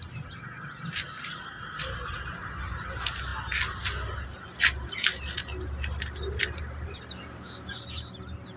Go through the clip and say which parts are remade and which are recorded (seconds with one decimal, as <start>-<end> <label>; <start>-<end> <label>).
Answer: 0.0-8.6 recorded